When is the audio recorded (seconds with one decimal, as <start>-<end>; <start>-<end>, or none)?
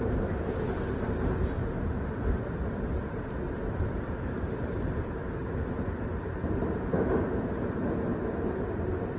1.6-2.1